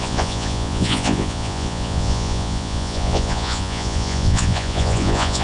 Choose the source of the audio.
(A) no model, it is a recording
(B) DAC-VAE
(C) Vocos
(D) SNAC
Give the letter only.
C